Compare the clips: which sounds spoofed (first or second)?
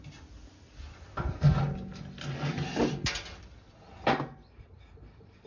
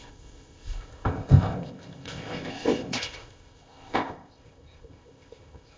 second